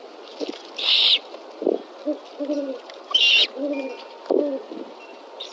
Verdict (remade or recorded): recorded